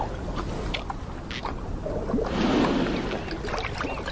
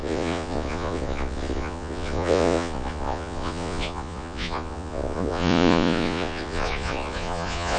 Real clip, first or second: first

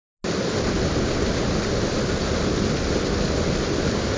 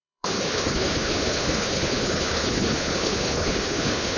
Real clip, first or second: first